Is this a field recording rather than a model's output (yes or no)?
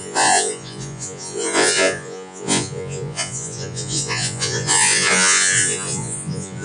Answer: no